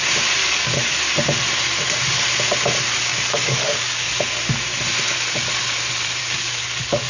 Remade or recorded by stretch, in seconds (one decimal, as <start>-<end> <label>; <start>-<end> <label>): 0.0-0.4 recorded; 0.4-1.0 remade; 1.0-3.1 recorded; 3.1-4.1 remade; 4.1-6.2 recorded; 6.2-7.1 remade